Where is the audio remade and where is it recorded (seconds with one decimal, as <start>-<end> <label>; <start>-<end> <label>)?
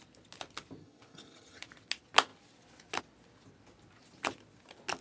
0.0-0.8 recorded; 0.8-1.6 remade; 1.6-5.0 recorded